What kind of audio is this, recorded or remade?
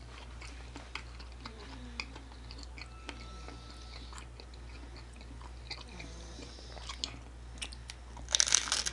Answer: recorded